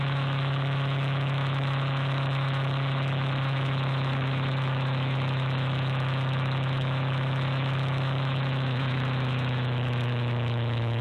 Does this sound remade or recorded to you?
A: remade